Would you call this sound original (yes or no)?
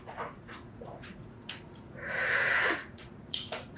no